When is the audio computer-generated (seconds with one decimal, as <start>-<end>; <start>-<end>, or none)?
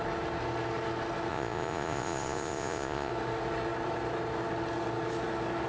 1.3-3.1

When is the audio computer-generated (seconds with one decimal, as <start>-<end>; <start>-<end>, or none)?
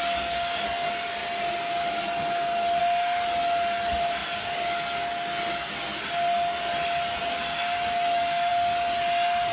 none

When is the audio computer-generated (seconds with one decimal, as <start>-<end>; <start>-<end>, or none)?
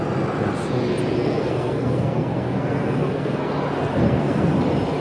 1.2-3.5; 3.9-4.5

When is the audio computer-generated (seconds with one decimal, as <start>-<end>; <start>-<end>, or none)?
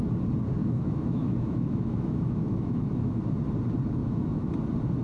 0.6-3.2; 4.0-4.5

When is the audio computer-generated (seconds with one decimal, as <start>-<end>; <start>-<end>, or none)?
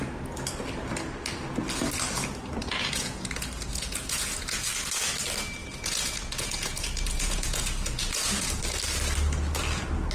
2.6-4.7; 5.6-8.6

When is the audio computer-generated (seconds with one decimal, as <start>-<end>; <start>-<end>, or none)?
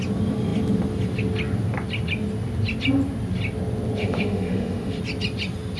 4.0-5.0